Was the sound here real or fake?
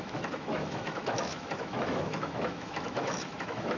fake